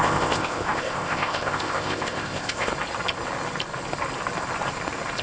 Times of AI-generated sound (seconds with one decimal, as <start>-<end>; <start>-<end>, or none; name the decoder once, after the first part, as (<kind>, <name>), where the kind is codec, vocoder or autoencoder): 0.0-2.7 (codec, ZipCodec)